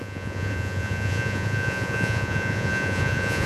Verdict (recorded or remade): remade